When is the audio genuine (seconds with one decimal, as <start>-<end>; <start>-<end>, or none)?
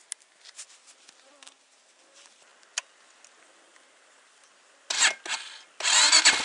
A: 0.0-6.4